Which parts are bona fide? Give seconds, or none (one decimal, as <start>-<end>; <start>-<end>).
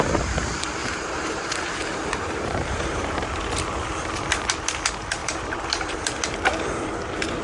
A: 0.0-0.8; 3.4-5.2; 6.0-7.4